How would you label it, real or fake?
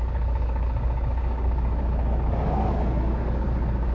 fake